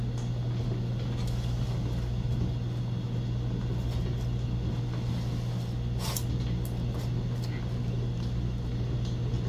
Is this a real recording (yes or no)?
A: yes